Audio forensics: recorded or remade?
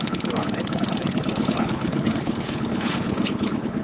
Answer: remade